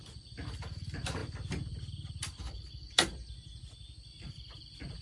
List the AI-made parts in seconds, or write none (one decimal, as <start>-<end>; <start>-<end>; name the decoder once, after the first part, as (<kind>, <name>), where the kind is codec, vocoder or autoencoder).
none